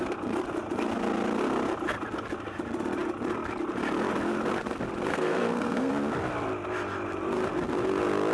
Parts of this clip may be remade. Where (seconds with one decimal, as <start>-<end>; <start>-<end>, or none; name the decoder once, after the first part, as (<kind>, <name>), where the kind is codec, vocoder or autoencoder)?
5.1-5.9 (codec, SNAC)